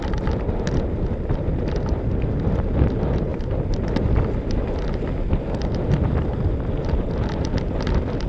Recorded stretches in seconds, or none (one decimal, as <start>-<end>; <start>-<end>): 0.0-8.3